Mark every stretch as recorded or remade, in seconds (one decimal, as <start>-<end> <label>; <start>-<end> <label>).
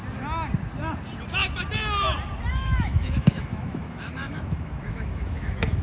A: 0.0-2.5 recorded; 2.5-5.8 remade